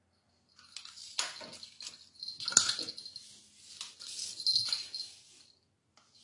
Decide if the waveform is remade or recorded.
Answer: recorded